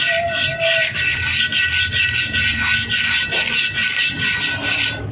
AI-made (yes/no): no